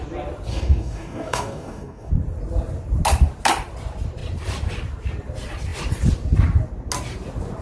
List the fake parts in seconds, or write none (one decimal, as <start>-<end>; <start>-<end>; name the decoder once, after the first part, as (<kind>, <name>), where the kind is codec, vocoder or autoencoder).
0.5-2.1 (codec, DAC)